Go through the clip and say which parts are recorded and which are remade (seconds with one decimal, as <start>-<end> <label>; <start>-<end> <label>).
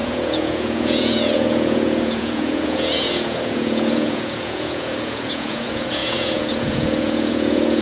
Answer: 0.0-7.8 remade